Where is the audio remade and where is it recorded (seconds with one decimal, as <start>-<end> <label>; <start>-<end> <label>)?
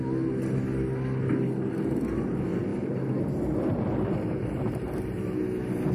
0.0-5.9 recorded